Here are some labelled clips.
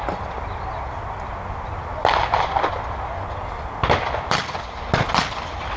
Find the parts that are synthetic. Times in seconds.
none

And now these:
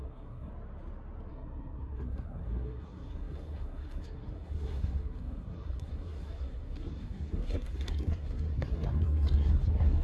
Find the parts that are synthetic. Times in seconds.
0.0-0.5 (codec, SNAC); 1.3-10.0

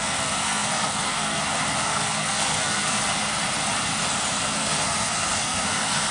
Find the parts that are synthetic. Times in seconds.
0.0-1.4 (codec, SNAC); 1.8-3.0; 4.4-6.1

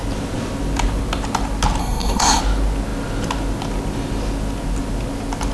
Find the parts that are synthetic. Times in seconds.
1.8-2.4 (codec, SNAC)

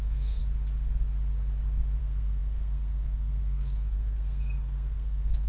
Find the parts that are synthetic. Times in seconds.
0.0-0.4 (codec, SNAC); 2.0-5.5

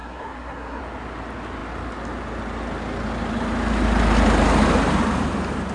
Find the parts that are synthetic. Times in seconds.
0.0-0.8 (codec, SNAC)

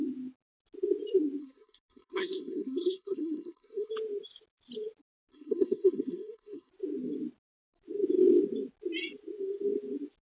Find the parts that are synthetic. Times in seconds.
1.4-3.9 (codec, SNAC); 5.3-6.7